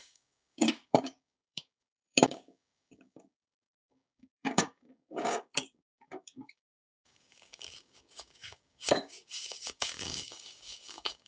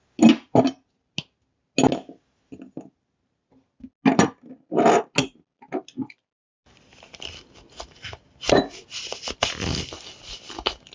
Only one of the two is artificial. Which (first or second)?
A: first